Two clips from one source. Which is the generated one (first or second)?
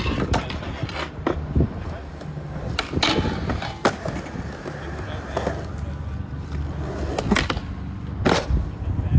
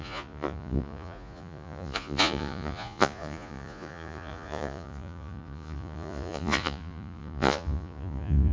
second